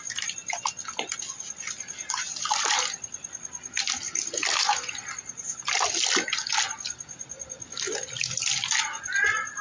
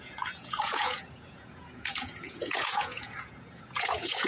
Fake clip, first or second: second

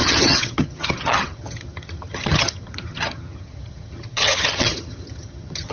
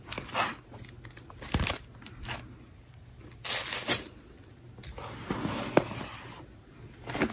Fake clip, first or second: first